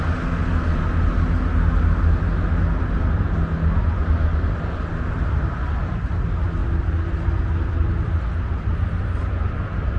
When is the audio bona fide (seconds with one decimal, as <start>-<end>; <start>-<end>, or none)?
0.0-10.0